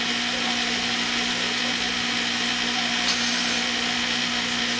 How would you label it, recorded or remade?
recorded